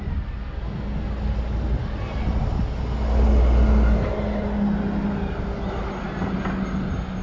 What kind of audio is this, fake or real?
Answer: real